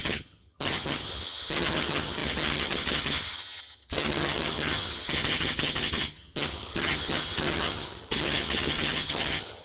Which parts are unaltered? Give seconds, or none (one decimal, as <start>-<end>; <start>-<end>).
none